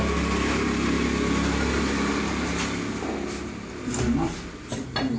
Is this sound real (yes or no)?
yes